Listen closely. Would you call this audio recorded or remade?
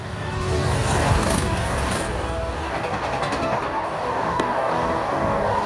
remade